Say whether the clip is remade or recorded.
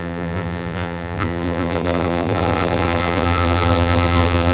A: remade